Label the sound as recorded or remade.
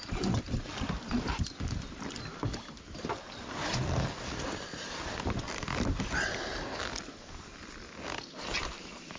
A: recorded